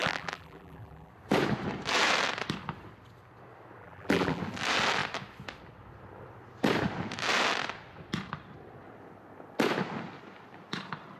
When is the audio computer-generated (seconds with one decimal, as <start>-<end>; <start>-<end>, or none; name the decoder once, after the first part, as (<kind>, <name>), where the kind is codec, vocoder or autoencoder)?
0.0-1.1 (vocoder, BigVGAN v2); 3.8-4.4